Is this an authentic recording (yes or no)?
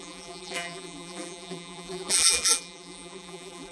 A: no